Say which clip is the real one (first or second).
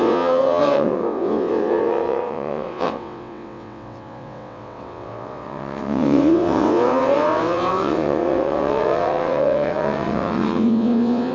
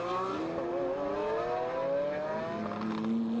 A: second